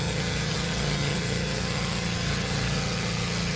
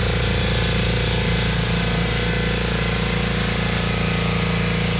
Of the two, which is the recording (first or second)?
second